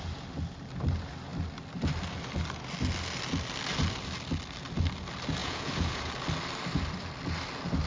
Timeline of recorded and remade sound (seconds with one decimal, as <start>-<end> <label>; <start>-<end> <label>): 0.0-5.4 recorded; 5.4-6.1 remade; 6.1-7.9 recorded